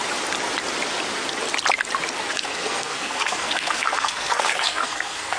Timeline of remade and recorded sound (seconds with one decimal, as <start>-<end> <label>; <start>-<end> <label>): 0.0-2.3 recorded; 2.3-5.4 remade